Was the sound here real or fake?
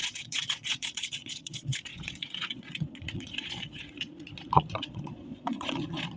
fake